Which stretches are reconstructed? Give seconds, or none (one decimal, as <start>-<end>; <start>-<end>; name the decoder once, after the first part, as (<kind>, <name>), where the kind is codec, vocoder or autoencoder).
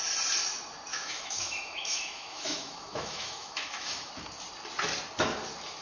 0.9-4.1 (autoencoder, DAC-VAE)